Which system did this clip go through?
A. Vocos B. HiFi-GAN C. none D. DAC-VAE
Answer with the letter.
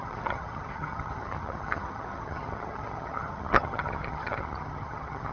B